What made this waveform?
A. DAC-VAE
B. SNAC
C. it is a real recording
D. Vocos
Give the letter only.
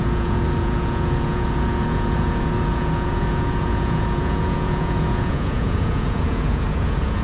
D